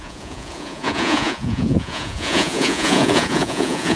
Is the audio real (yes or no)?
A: no